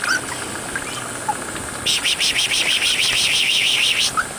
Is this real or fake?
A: real